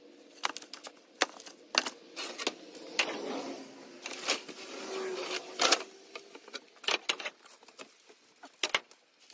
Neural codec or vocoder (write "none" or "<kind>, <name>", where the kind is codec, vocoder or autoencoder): none